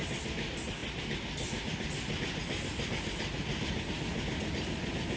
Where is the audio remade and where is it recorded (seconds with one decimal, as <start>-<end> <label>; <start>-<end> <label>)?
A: 0.0-5.2 recorded